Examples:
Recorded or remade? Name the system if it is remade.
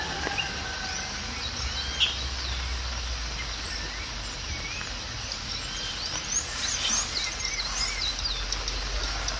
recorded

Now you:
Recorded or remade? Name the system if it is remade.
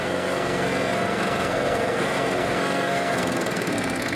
remade, codec, SNAC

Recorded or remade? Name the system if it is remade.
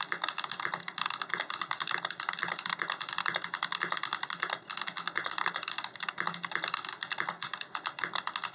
recorded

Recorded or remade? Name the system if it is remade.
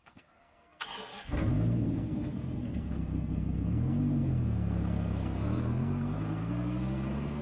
remade, codec, SNAC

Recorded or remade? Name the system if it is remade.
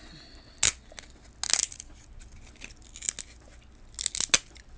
recorded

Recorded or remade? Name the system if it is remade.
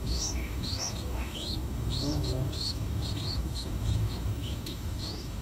remade, codec, DAC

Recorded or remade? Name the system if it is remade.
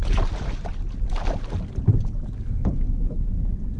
recorded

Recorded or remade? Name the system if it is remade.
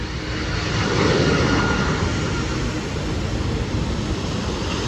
recorded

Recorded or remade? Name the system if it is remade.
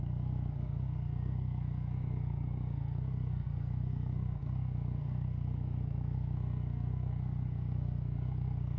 remade, codec, SNAC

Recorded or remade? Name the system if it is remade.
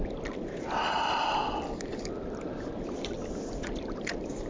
recorded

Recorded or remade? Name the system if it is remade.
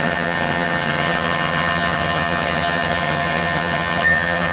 remade, vocoder, HiFi-GAN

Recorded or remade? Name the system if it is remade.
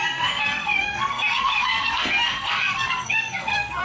remade, codec, SNAC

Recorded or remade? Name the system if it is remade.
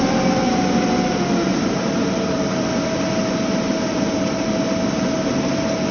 recorded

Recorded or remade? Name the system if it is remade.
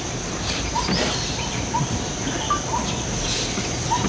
recorded